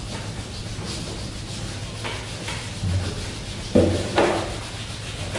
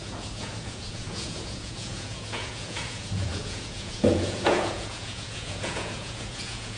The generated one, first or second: second